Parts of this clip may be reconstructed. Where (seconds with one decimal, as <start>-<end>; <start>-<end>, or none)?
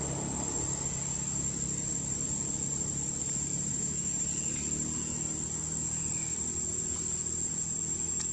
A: 3.7-4.2